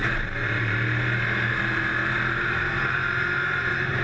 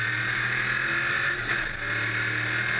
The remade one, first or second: first